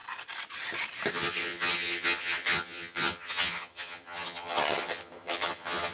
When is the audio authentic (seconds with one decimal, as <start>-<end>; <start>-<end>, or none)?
0.0-1.1